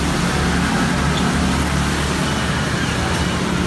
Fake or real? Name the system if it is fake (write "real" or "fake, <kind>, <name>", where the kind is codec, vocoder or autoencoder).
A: real